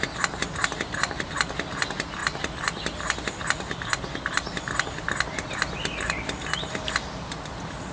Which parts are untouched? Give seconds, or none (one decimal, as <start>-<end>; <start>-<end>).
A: 0.0-7.9